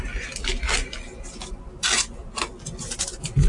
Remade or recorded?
recorded